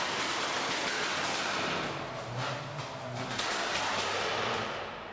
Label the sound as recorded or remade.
recorded